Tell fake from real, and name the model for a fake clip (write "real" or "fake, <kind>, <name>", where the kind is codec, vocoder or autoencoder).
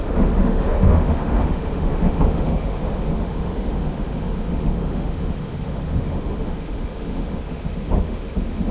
fake, autoencoder, DAC-VAE